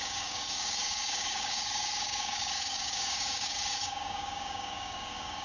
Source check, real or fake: fake